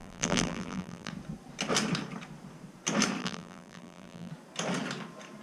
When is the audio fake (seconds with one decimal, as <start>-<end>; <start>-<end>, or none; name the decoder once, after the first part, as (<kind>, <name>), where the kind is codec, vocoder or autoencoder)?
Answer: 0.0-1.1 (vocoder, BigVGAN v2); 3.2-4.3